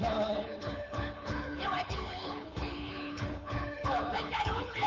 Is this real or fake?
fake